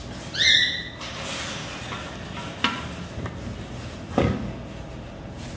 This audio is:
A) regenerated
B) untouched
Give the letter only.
B